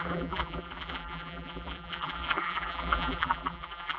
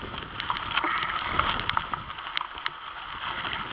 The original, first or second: second